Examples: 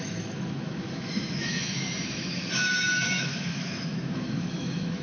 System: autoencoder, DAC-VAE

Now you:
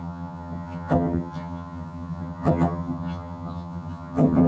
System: vocoder, HiFi-GAN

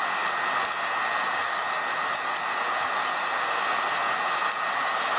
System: none